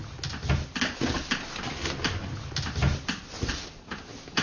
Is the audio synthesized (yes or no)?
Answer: no